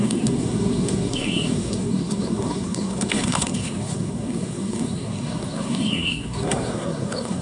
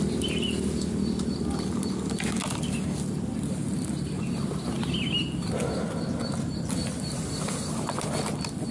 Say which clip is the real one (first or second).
second